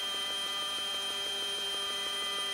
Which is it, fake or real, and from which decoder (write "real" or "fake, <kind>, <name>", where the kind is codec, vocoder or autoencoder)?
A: fake, vocoder, BigVGAN v2